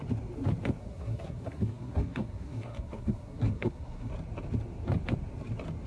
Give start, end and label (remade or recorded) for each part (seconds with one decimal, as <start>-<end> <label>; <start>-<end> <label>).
0.0-0.8 recorded; 0.8-4.1 remade; 4.1-5.9 recorded